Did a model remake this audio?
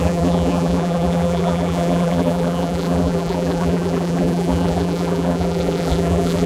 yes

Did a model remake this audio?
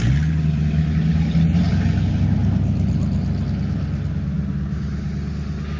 no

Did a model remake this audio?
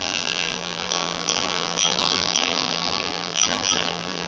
yes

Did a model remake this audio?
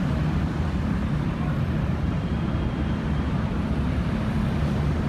yes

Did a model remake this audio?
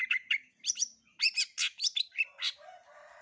no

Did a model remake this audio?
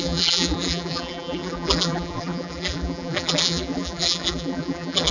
yes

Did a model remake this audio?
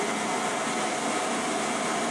no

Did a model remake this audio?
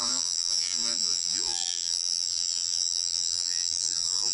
yes